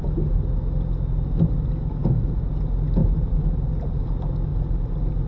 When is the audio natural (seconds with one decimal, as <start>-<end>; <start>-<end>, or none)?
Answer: 0.0-3.0; 4.0-4.5